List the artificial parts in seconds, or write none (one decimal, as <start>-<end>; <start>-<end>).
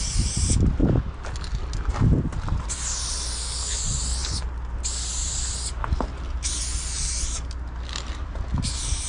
none